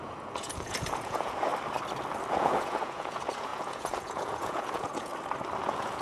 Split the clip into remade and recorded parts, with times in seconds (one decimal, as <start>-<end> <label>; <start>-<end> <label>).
0.0-1.5 remade; 1.5-2.3 recorded; 2.3-5.1 remade; 5.1-5.6 recorded; 5.6-6.0 remade